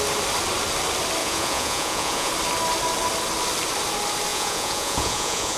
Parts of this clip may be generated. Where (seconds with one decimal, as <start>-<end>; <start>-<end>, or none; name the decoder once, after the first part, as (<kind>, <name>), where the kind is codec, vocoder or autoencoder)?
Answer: 1.2-2.3 (vocoder, Vocos); 4.3-5.6